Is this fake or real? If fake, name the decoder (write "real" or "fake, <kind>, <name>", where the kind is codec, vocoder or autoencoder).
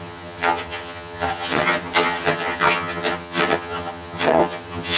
fake, vocoder, HiFi-GAN